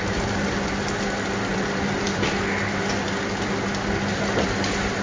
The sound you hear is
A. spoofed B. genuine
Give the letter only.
B